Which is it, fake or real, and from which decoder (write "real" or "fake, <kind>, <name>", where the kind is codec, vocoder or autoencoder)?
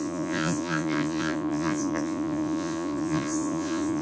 fake, vocoder, Vocos